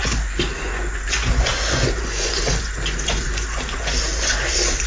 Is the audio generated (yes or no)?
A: yes